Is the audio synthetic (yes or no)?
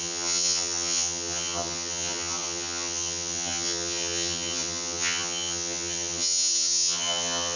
yes